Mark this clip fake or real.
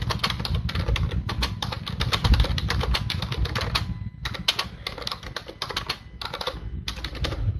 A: real